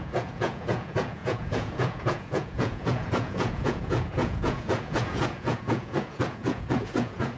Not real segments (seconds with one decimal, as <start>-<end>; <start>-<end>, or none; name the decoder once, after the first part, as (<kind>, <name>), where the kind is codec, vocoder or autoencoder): 0.0-7.4 (vocoder, Vocos)